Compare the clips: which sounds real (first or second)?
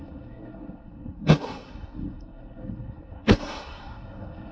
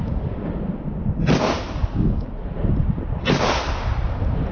second